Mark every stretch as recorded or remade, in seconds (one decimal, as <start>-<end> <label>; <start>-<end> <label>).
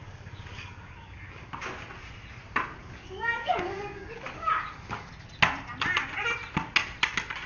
0.0-1.5 remade; 1.5-2.8 recorded; 2.8-5.1 remade; 5.1-7.5 recorded